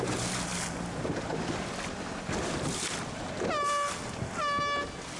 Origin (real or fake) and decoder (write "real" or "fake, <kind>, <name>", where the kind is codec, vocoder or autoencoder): real